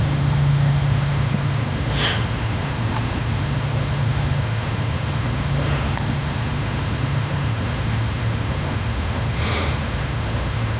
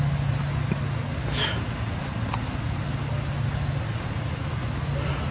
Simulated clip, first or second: first